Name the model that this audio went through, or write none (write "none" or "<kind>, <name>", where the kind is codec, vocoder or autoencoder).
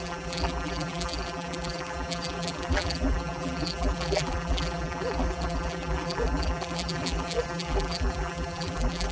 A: vocoder, BigVGAN v2